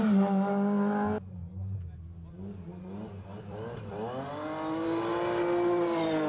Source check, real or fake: real